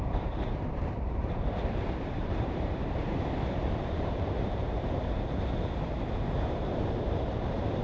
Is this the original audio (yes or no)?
no